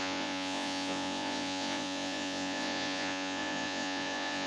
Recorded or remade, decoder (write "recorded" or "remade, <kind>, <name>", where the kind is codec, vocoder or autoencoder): remade, vocoder, Vocos